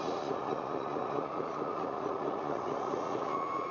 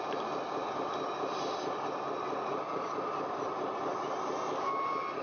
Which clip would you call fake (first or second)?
first